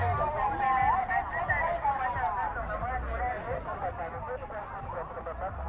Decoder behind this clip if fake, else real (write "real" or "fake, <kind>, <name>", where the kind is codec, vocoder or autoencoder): real